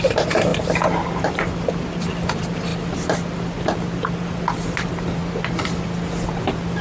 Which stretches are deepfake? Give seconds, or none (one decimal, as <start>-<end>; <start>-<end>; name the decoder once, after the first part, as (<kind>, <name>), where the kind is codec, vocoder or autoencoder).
0.0-0.5 (vocoder, BigVGAN v2); 1.2-5.2